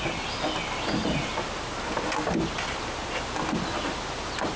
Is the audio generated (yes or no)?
no